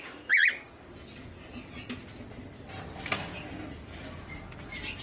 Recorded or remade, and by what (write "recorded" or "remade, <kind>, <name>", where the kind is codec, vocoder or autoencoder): recorded